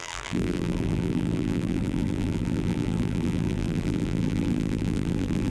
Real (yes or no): no